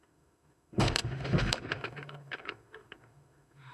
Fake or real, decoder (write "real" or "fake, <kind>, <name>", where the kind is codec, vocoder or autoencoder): fake, autoencoder, DAC-VAE